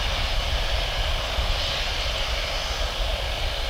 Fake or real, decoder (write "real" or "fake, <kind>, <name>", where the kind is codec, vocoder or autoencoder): real